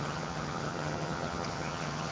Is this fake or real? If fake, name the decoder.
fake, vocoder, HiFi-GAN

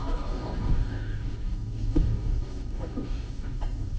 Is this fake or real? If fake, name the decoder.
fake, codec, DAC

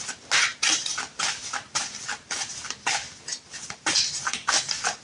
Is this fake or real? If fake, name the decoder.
real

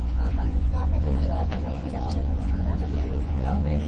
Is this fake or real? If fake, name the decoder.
fake, vocoder, Vocos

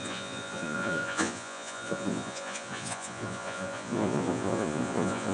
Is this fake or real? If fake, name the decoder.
fake, vocoder, Vocos